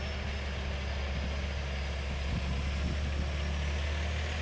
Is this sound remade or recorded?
recorded